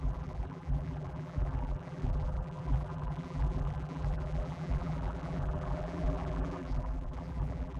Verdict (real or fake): fake